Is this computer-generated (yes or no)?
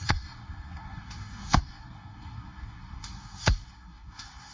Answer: yes